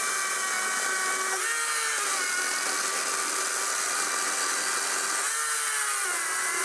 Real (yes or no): yes